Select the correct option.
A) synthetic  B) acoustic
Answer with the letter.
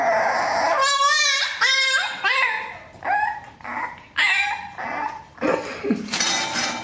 B